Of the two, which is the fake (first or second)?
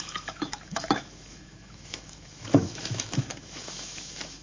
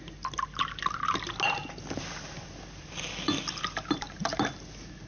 first